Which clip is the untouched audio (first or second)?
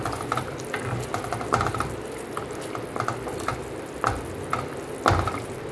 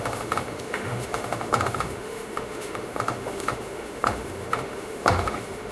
first